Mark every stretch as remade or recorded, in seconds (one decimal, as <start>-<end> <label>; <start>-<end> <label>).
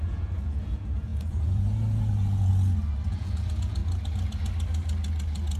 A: 0.0-2.5 remade; 2.5-3.1 recorded; 3.1-3.8 remade; 3.8-5.6 recorded